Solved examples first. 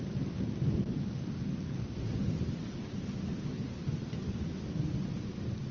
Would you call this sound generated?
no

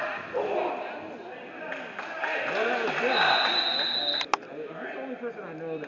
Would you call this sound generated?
no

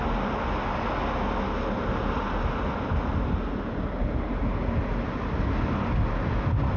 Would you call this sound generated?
no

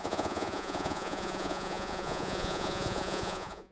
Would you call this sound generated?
yes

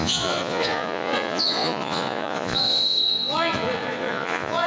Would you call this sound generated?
yes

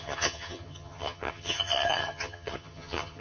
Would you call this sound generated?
yes